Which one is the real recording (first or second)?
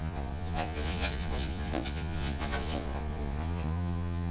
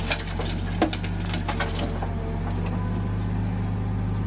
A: second